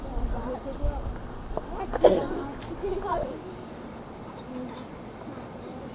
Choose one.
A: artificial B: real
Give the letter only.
B